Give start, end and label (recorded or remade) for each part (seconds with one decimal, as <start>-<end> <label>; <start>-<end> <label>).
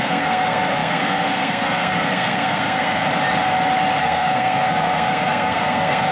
0.0-3.0 remade; 3.0-4.0 recorded; 4.0-6.1 remade